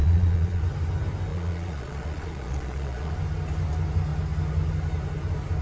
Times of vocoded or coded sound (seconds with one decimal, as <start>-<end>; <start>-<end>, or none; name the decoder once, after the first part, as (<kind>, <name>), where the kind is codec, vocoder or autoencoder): 0.0-0.6 (vocoder, Vocos); 1.3-3.1